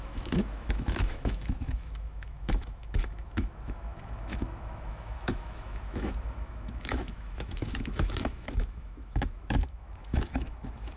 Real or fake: fake